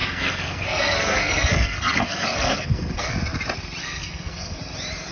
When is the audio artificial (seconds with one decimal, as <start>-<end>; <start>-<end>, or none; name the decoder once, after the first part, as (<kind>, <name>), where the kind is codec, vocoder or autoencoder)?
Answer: 0.0-3.1 (codec, SNAC); 3.8-4.6